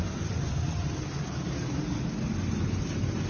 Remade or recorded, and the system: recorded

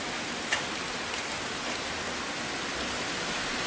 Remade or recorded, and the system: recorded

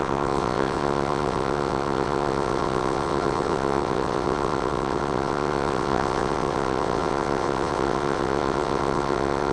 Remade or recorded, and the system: remade, vocoder, WaveNeXt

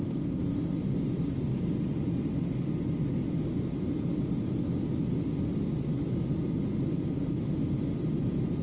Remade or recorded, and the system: recorded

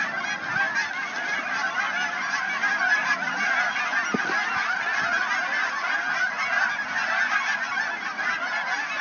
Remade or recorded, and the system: recorded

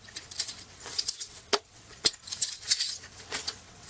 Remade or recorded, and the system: remade, vocoder, WaveNeXt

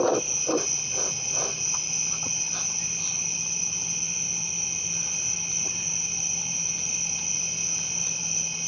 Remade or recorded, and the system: recorded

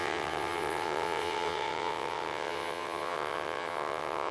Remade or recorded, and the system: remade, vocoder, WaveNeXt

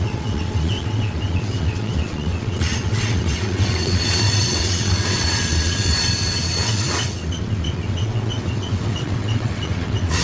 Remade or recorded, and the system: remade, vocoder, WaveNeXt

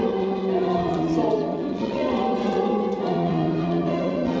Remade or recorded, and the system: remade, vocoder, WaveNeXt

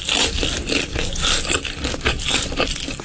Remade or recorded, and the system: recorded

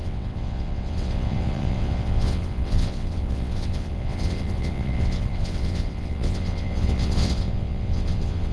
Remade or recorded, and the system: remade, vocoder, WaveNeXt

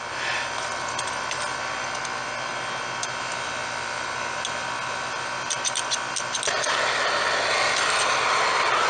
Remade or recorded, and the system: recorded